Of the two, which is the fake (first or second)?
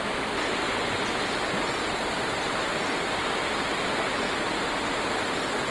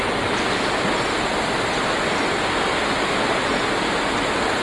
first